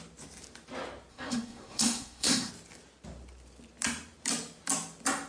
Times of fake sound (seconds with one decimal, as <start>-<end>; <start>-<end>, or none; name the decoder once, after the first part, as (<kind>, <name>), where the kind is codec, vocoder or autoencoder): 1.1-2.5 (codec, SNAC)